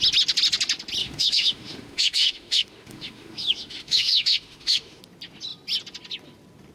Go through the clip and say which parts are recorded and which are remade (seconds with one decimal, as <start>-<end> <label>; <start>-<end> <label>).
0.0-1.0 recorded; 1.0-5.0 remade; 5.0-6.7 recorded